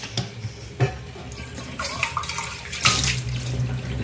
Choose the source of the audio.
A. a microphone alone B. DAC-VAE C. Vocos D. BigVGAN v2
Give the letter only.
A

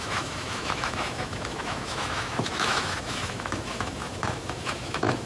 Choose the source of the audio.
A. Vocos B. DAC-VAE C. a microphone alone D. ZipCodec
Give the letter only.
B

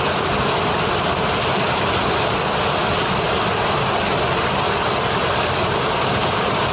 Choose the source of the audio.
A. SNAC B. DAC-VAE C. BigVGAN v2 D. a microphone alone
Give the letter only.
D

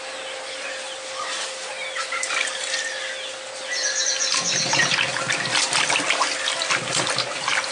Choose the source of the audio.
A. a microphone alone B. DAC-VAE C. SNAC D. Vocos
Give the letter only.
A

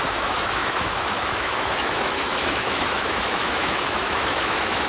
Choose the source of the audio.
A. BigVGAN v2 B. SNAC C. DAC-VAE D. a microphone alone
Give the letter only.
C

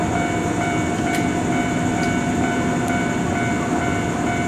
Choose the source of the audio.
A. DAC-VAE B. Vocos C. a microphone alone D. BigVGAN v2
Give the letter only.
C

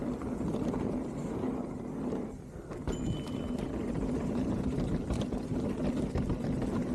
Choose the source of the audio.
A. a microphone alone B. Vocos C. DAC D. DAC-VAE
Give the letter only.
A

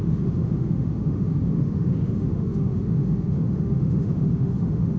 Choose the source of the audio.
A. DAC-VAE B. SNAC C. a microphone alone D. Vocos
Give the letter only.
A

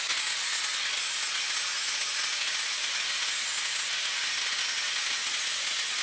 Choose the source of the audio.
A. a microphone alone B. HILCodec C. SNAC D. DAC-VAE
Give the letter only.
A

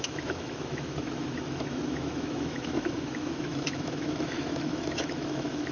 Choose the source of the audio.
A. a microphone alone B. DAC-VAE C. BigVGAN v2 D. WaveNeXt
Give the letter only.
B